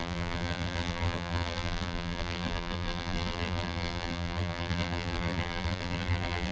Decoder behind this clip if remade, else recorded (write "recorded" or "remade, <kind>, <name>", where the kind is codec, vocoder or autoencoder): remade, vocoder, BigVGAN v2